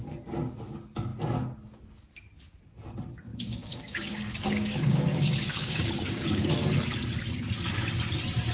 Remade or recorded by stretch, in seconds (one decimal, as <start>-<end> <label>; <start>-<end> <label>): 0.0-3.3 recorded; 3.3-6.5 remade; 6.5-8.5 recorded